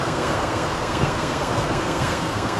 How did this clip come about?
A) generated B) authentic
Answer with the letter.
A